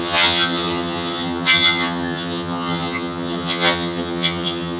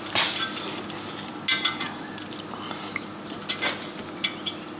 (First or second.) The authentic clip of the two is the second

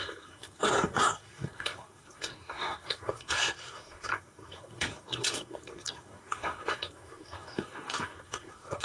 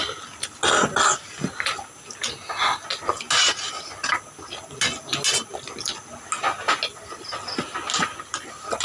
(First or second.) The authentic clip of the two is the second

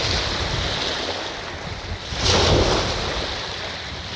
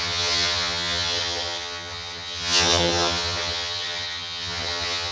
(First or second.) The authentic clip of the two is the first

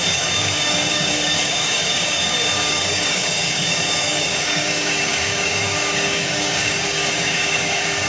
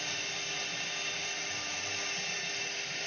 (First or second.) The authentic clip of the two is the second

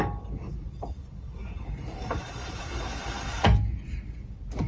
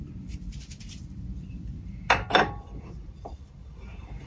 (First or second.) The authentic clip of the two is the first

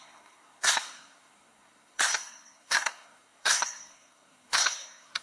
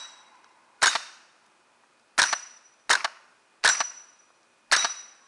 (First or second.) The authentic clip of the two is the second